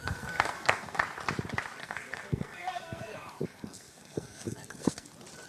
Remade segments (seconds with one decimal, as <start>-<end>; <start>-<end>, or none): 0.0-1.0; 1.8-5.1